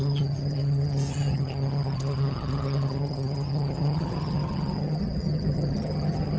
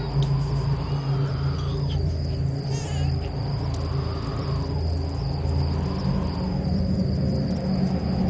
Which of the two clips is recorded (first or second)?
second